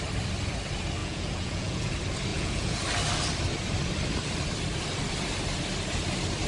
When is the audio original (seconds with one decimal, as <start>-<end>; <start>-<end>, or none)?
0.0-1.0; 1.9-2.3; 2.8-6.5